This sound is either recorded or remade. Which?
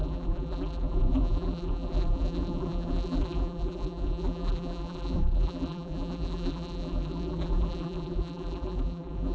remade